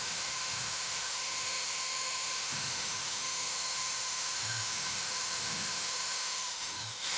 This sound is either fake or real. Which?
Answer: fake